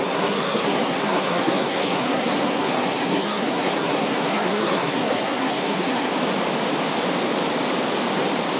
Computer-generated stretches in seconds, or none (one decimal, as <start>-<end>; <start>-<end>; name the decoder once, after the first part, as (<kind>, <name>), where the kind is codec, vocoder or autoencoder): 0.0-6.1 (codec, SNAC)